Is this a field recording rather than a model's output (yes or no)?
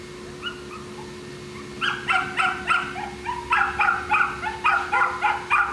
yes